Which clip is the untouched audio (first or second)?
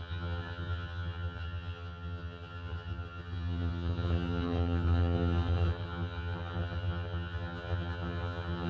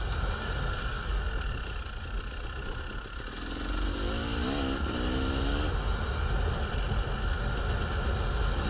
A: second